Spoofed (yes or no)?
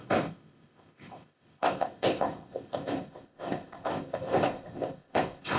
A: yes